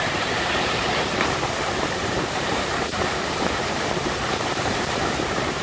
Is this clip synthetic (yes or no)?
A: yes